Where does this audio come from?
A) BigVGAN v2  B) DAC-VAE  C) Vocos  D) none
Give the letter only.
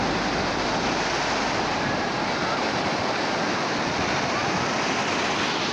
D